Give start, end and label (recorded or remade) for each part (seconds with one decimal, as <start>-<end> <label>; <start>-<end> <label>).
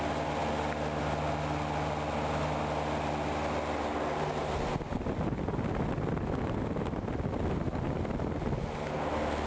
0.0-9.5 recorded